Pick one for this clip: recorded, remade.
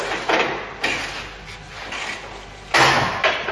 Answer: recorded